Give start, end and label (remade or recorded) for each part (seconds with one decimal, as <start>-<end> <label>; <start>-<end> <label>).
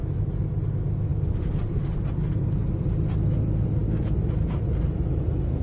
0.0-5.6 recorded